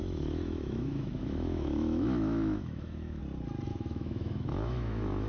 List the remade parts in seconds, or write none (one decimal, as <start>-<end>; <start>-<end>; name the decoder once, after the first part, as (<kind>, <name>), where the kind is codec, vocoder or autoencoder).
0.0-3.2 (autoencoder, DAC-VAE); 3.7-5.3